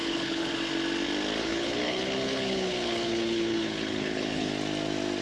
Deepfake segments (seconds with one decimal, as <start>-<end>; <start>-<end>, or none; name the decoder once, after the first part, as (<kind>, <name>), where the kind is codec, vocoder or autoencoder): 0.0-0.5 (codec, HILCodec); 1.4-4.5